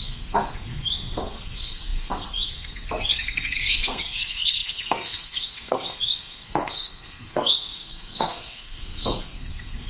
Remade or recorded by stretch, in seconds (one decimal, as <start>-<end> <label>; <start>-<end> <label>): 0.0-9.9 remade